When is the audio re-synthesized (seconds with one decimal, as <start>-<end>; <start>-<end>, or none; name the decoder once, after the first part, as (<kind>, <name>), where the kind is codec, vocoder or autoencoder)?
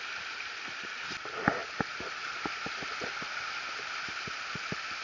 none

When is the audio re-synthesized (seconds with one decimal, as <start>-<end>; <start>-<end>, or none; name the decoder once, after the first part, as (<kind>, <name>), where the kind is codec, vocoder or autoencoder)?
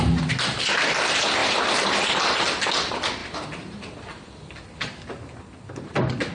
1.4-2.4 (vocoder, BigVGAN v2); 3.2-4.0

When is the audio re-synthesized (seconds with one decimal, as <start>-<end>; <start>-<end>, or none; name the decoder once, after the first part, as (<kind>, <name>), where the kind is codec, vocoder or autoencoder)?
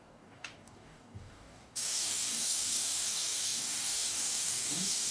0.0-5.1 (codec, DAC)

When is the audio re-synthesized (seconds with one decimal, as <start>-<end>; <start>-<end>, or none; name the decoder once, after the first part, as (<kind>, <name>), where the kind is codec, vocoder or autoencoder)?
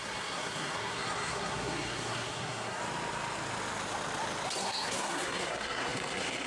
0.0-2.8 (codec, SNAC); 4.6-6.5